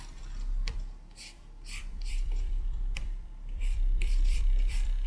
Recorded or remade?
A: remade